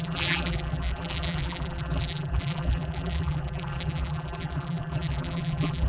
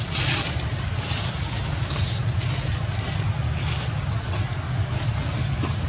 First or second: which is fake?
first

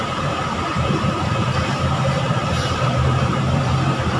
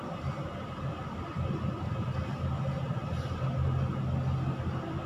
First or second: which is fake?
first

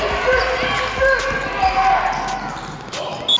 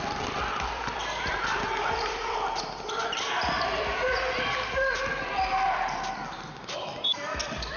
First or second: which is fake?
second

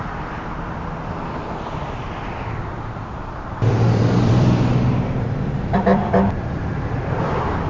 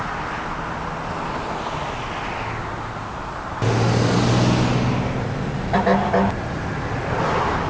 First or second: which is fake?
first